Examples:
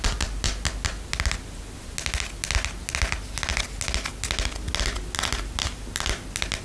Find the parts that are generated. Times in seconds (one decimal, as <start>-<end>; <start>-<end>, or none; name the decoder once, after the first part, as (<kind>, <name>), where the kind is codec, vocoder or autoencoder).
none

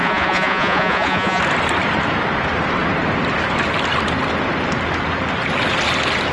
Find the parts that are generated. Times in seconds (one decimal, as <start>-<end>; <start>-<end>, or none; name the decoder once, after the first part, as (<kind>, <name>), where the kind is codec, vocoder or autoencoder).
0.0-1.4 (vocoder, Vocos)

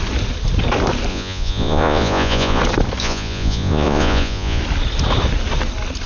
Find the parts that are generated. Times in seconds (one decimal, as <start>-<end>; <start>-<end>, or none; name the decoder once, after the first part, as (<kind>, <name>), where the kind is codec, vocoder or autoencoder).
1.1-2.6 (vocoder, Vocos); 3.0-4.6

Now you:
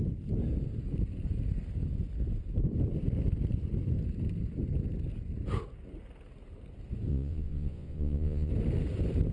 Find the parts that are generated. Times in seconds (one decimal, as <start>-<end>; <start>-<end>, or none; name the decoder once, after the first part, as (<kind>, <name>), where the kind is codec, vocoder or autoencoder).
7.1-8.5 (vocoder, Vocos)